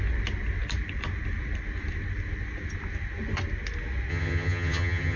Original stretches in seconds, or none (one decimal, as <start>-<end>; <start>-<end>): 0.0-4.1